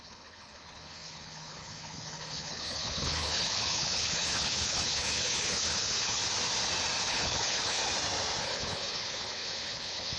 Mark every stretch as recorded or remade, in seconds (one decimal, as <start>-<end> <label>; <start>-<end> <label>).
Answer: 0.0-6.2 remade; 6.2-7.1 recorded; 7.1-7.8 remade; 7.8-8.4 recorded; 8.4-10.2 remade